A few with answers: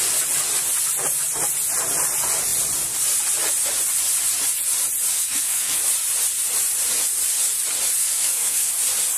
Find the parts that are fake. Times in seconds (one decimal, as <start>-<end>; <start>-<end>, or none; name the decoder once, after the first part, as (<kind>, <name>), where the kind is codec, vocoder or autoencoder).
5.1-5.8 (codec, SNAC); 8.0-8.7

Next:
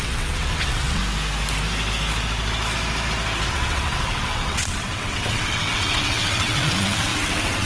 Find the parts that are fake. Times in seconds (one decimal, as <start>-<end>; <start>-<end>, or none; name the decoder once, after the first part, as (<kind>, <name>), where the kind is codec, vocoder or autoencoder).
0.0-1.0 (vocoder, WaveNeXt); 3.5-7.7

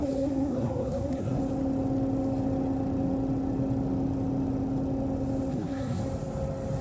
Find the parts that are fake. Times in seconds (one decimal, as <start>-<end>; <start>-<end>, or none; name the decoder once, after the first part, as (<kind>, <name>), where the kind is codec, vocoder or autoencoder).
0.0-1.4 (codec, SNAC); 5.5-6.0

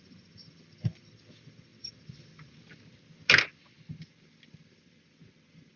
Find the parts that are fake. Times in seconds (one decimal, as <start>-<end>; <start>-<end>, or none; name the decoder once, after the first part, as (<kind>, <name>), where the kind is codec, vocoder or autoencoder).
none

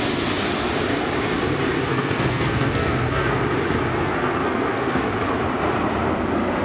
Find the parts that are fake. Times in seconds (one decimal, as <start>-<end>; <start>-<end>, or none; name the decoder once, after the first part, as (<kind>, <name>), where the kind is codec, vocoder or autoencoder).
1.9-3.4 (codec, SNAC); 3.9-5.0

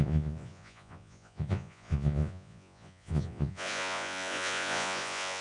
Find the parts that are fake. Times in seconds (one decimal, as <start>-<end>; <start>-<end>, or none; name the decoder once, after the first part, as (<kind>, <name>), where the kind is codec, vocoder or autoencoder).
0.0-5.4 (vocoder, Vocos)

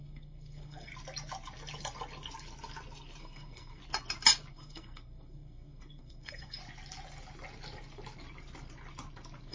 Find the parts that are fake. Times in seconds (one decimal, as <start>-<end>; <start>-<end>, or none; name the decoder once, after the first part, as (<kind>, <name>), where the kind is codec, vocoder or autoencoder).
0.0-0.9 (codec, SNAC); 3.2-3.8; 4.5-6.6